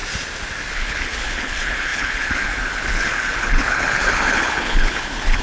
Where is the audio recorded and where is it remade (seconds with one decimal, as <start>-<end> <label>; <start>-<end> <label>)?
0.0-0.7 recorded; 0.7-5.4 remade

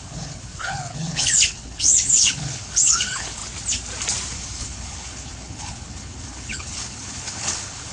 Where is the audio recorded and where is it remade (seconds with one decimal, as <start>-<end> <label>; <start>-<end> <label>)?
0.0-3.4 remade; 3.4-4.3 recorded; 4.3-7.9 remade